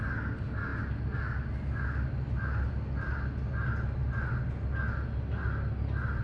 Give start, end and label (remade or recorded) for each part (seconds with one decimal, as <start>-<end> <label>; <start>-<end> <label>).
0.0-6.2 recorded